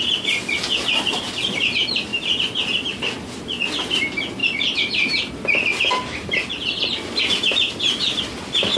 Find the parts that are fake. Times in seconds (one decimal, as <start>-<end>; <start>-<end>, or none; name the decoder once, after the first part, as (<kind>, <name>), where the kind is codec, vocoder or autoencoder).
2.1-3.7 (vocoder, BigVGAN v2); 4.4-8.2